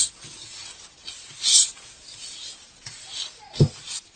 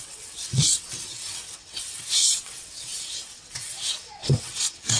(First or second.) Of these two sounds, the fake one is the second